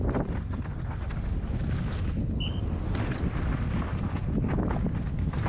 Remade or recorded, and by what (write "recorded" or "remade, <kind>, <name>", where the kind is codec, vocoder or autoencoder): recorded